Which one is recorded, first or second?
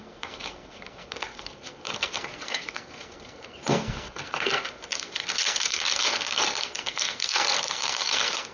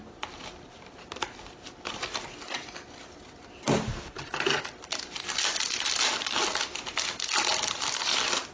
second